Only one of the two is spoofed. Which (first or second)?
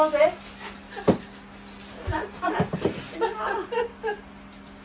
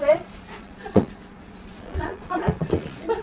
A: second